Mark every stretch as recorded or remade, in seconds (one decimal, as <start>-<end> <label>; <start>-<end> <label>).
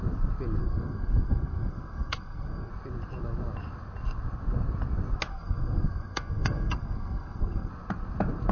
0.0-0.6 recorded; 0.6-2.7 remade; 2.7-5.3 recorded; 5.3-7.7 remade; 7.7-8.5 recorded